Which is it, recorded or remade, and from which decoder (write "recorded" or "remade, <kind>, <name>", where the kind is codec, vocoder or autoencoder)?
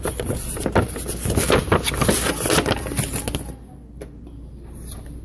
recorded